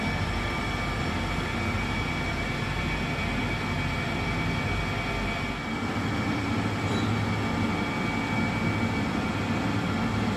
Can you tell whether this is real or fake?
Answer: real